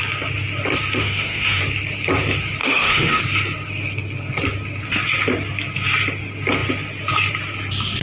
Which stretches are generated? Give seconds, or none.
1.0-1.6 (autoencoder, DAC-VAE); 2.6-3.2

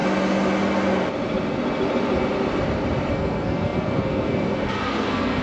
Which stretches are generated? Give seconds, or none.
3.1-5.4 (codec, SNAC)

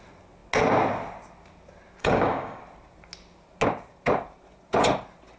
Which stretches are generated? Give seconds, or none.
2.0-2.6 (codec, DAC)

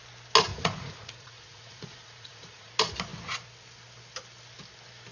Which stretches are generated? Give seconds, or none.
0.5-2.7 (vocoder, Vocos)

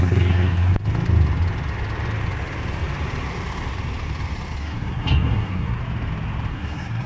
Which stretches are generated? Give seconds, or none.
0.0-0.7 (codec, SNAC); 4.6-5.8; 6.5-7.1